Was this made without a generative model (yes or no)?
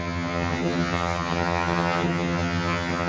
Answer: no